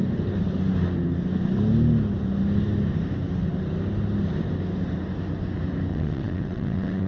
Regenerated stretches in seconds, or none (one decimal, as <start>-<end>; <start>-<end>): 5.9-7.1